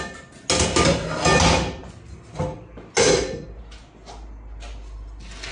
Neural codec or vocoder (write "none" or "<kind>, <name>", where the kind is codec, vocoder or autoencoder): none